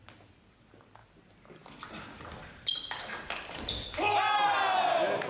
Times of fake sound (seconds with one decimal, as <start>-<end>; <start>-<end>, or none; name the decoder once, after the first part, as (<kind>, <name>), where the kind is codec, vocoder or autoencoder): none